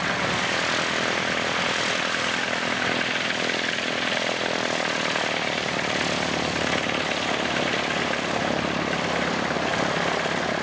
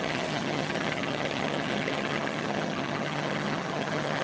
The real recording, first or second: first